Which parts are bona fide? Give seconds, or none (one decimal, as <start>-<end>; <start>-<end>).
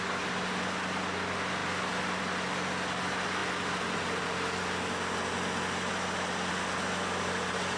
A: 0.0-7.8